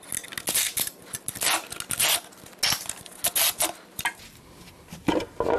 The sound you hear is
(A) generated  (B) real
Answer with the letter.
B